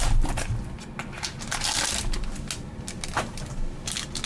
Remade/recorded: recorded